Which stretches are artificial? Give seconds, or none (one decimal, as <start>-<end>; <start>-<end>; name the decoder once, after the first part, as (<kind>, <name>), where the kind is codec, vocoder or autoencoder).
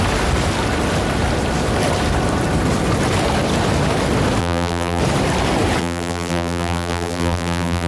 4.4-5.0 (vocoder, BigVGAN v2); 5.8-7.9